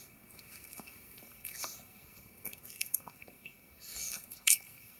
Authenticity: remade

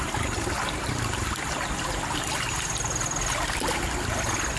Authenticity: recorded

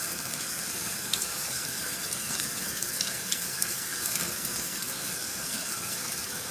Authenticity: remade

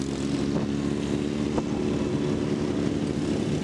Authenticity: recorded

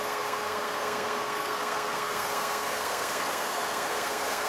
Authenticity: remade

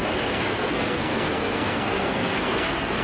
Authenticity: remade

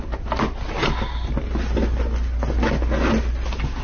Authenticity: recorded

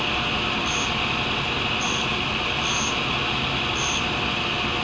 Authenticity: recorded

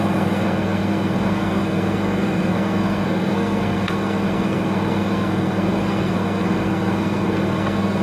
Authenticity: remade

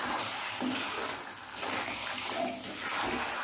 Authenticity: recorded